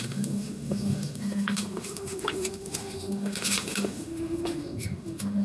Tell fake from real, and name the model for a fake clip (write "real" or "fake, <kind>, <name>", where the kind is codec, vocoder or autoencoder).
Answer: fake, autoencoder, DAC-VAE